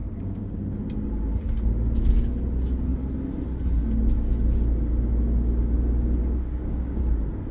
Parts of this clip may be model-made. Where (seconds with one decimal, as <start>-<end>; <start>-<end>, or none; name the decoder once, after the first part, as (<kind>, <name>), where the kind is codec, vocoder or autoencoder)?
0.0-0.7 (codec, DAC); 6.2-7.0